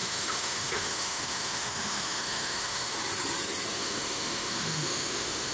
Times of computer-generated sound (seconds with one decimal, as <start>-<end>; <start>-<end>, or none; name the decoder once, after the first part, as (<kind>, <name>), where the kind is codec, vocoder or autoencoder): 0.0-3.0 (autoencoder, DAC-VAE); 3.8-5.5